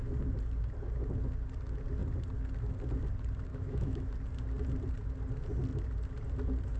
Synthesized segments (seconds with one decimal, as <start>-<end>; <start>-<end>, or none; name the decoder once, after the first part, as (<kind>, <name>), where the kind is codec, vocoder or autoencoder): 3.5-4.1 (autoencoder, DAC-VAE)